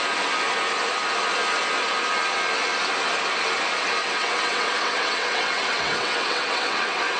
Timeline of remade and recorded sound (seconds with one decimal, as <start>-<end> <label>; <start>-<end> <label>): 0.0-4.0 recorded; 4.0-7.2 remade